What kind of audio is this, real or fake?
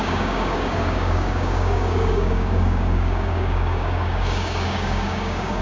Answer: fake